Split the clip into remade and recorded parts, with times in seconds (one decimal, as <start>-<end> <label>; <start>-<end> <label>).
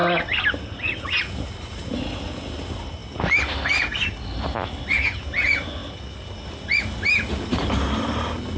0.0-5.8 recorded; 5.8-6.3 remade; 6.3-8.6 recorded